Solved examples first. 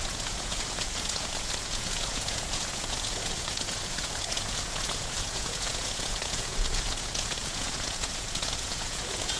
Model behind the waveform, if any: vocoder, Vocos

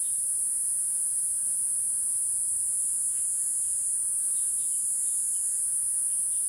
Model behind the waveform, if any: vocoder, Vocos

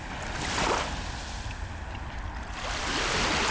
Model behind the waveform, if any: none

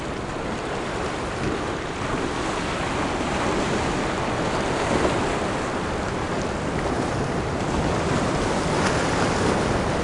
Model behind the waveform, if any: none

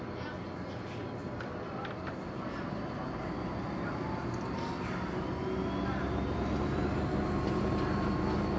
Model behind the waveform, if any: none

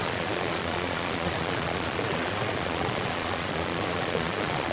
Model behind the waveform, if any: vocoder, Vocos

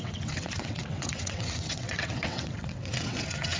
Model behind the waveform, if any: vocoder, WaveNeXt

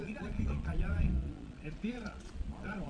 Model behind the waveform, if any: vocoder, Vocos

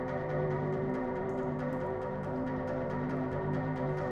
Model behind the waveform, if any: vocoder, BigVGAN v2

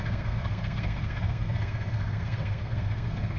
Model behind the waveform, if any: codec, SNAC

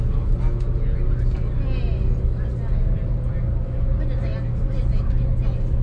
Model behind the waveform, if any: none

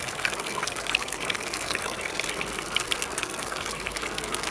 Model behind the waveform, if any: codec, SNAC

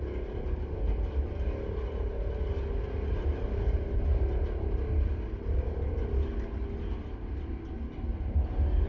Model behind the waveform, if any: none